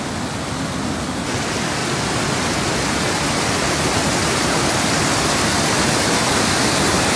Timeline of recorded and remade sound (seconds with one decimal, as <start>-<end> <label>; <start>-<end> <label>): 0.0-7.2 recorded